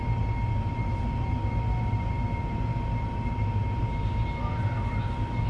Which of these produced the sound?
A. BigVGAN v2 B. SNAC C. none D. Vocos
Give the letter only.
C